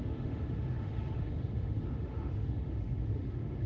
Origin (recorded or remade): remade